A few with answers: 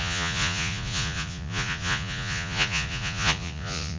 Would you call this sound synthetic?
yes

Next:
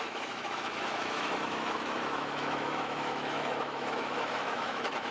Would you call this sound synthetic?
yes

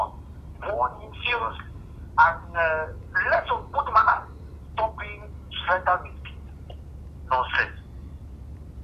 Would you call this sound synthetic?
no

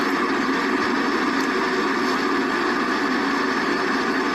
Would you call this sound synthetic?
no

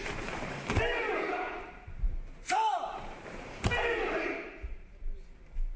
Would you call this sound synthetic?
yes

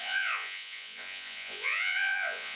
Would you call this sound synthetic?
yes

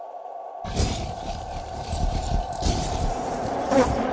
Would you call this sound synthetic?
yes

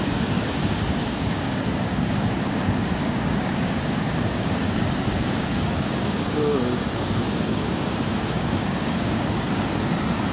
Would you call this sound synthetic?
yes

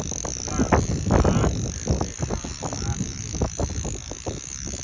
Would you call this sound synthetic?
no